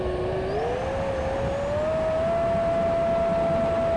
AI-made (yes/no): no